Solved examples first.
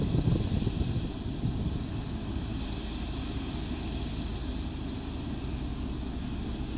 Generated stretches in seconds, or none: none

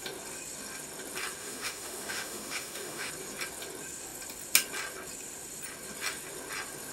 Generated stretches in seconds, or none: 1.4-3.1 (autoencoder, DAC-VAE)